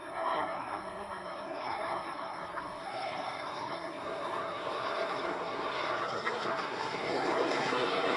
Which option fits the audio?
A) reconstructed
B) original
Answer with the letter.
A